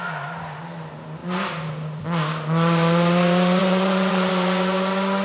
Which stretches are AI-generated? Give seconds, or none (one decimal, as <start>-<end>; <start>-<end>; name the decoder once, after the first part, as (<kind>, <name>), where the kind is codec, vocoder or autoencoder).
3.6-4.3 (vocoder, WaveNeXt)